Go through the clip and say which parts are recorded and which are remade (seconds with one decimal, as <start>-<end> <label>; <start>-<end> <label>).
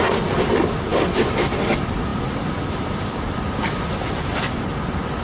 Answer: 0.0-5.2 recorded